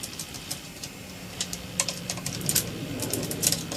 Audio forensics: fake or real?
fake